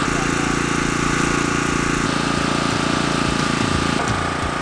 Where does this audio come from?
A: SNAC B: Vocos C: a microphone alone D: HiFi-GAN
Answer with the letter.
C